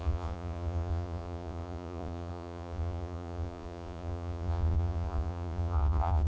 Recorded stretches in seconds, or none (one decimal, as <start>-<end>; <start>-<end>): none